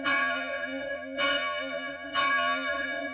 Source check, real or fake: fake